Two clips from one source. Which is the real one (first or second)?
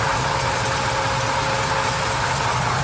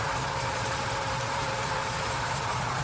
first